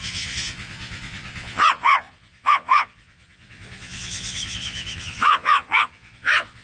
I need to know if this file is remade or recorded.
remade